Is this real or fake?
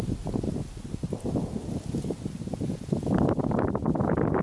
real